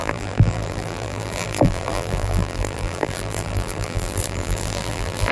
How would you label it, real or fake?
fake